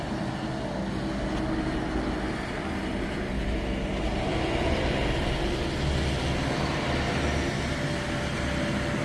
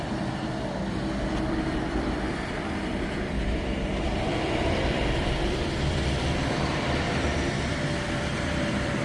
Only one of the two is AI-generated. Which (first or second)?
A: second